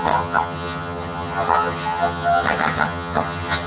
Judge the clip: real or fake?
fake